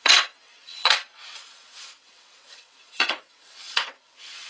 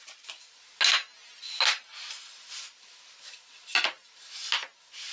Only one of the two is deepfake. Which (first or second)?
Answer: first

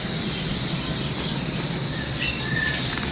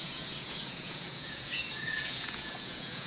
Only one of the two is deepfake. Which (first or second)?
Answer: second